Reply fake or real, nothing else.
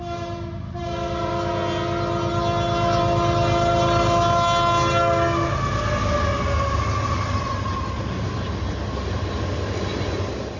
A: real